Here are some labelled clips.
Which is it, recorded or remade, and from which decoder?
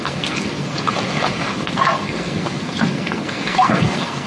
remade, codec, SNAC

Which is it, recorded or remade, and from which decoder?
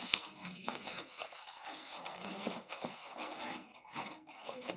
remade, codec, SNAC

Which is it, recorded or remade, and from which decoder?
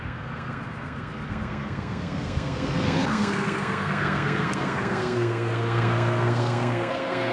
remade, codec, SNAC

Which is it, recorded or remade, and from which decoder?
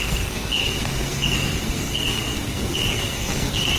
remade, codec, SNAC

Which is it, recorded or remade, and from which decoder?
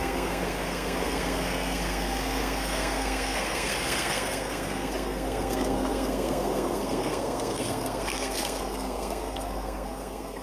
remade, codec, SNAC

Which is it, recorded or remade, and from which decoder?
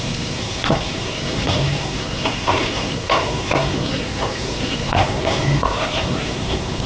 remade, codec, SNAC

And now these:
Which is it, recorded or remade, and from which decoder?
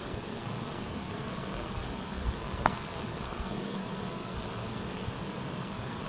remade, codec, SNAC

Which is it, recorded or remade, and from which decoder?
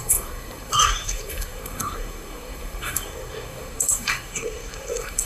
remade, codec, SNAC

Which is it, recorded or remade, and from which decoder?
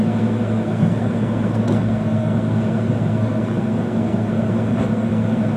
remade, codec, SNAC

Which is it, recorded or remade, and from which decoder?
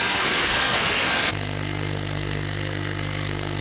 remade, codec, SNAC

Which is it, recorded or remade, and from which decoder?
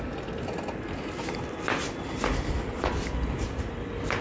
recorded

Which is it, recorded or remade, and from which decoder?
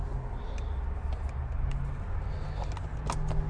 recorded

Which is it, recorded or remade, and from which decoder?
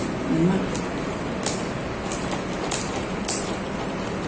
recorded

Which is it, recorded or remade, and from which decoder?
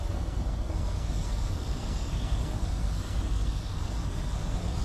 remade, codec, SNAC